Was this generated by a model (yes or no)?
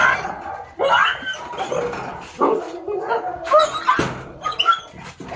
no